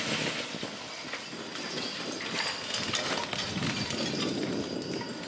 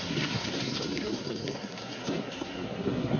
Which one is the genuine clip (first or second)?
first